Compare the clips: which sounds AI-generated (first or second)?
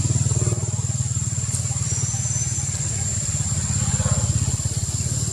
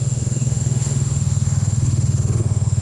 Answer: second